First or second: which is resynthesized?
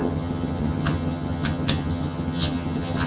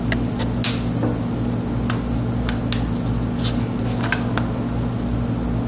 first